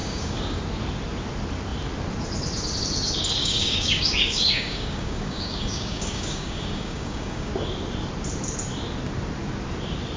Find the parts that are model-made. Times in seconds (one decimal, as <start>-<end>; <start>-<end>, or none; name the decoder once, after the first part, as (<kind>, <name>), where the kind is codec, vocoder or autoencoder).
0.0-0.6 (codec, DAC); 3.4-7.5